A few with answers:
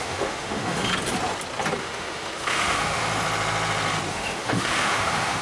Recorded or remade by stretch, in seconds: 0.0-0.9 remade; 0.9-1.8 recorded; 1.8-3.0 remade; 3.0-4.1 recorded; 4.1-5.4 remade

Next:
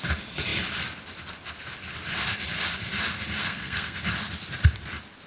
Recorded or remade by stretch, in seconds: 0.0-3.4 recorded; 3.4-4.0 remade; 4.0-5.3 recorded

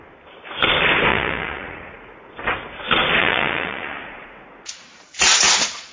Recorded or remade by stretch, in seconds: 0.0-1.1 recorded; 1.1-2.3 remade; 2.3-3.2 recorded; 3.2-5.9 remade

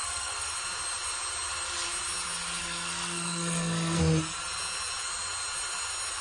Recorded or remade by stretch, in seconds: 0.0-0.5 remade; 0.5-2.6 recorded; 2.6-4.0 remade; 4.0-6.2 recorded

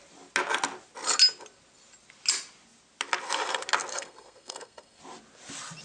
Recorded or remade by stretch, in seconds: 0.0-3.9 recorded; 3.9-5.0 remade; 5.0-5.8 recorded

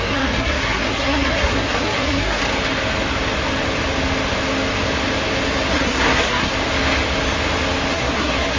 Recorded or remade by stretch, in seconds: 0.0-2.4 remade; 2.4-5.7 recorded; 5.7-6.5 remade; 6.5-7.9 recorded; 7.9-8.6 remade